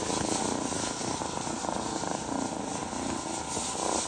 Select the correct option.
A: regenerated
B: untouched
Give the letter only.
B